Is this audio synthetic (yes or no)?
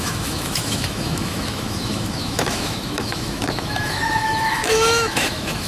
yes